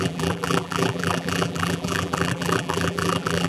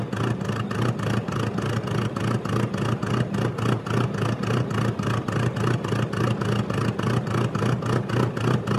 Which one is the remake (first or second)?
first